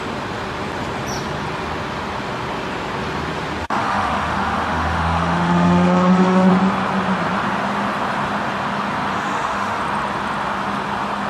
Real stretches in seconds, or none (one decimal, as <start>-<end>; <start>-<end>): 0.0-3.6; 6.5-9.1; 9.8-11.3

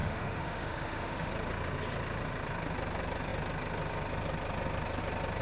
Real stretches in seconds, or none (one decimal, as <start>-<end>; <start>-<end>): 1.3-5.4

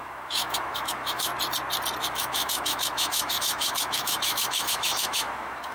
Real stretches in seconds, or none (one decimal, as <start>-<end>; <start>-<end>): 1.3-2.0

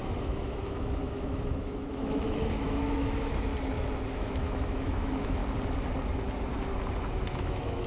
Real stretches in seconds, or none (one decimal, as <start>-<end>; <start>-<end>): 3.5-4.1; 5.4-7.4

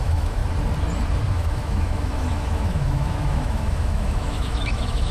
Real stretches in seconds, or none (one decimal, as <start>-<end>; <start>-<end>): 0.4-1.3